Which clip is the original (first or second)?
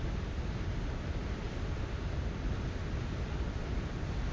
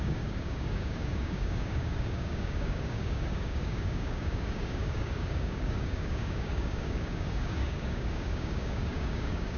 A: first